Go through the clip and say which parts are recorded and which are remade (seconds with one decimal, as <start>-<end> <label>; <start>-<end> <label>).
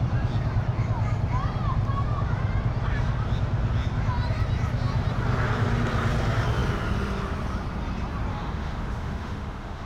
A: 0.0-8.3 recorded; 8.3-9.9 remade